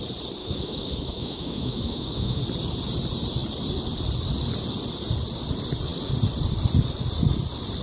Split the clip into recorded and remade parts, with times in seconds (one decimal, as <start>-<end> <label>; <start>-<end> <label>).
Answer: 0.0-0.4 recorded; 0.4-2.4 remade; 2.4-7.8 recorded